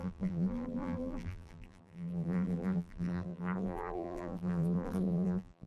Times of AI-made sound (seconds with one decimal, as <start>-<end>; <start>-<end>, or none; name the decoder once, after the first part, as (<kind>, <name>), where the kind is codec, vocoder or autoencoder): 0.0-5.7 (vocoder, BigVGAN v2)